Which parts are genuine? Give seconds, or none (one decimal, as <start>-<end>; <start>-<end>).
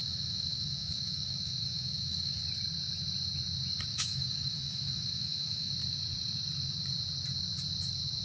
2.4-3.9; 5.7-8.2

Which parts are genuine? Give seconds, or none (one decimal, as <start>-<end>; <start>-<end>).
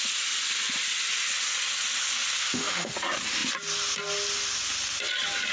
0.0-2.4; 2.9-5.5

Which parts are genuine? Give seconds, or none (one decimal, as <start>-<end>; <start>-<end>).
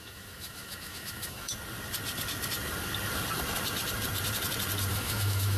1.5-4.9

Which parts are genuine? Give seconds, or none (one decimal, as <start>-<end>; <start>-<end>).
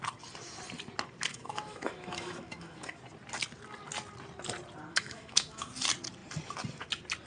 0.0-1.3; 3.0-4.9; 5.7-7.3